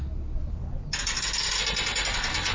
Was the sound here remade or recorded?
recorded